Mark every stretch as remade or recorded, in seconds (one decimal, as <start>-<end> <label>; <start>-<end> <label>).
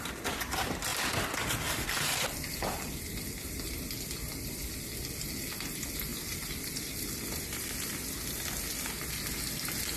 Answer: 0.0-0.9 recorded; 0.9-3.0 remade; 3.0-6.1 recorded; 6.1-7.9 remade; 7.9-10.0 recorded